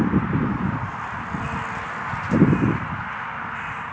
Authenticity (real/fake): real